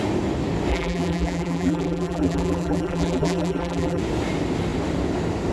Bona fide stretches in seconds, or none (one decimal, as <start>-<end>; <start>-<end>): 0.0-0.7; 4.0-5.5